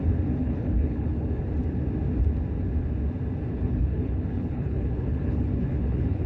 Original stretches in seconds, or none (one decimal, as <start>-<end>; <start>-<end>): 0.0-0.4; 1.4-3.5